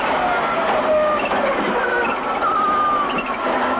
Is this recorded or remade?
recorded